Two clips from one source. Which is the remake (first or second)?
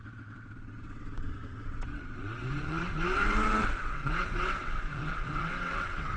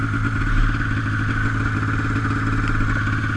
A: first